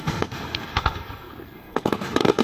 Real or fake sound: fake